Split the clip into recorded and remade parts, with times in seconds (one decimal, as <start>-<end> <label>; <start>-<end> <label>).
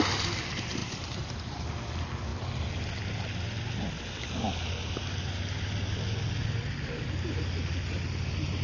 0.0-8.6 recorded